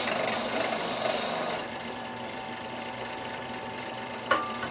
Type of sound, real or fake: fake